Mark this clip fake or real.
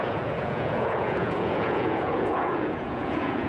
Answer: fake